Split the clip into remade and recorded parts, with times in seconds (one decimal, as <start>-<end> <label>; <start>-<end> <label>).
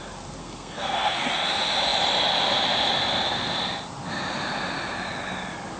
0.0-0.4 recorded; 0.4-1.3 remade; 1.3-5.8 recorded